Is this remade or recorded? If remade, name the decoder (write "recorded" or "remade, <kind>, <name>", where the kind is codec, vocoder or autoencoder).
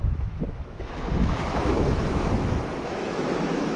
remade, autoencoder, DAC-VAE